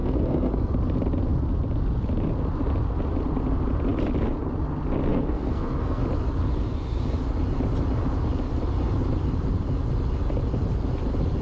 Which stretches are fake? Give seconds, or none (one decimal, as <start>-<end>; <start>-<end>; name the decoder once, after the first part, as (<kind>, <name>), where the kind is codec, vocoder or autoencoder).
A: 0.0-0.7 (codec, SNAC); 5.1-6.0